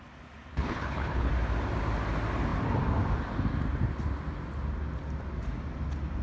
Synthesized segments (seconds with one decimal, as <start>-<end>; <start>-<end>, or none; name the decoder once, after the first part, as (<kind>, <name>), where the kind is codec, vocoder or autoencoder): 0.5-1.3 (codec, HILCodec)